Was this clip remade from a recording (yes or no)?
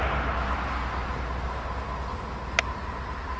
no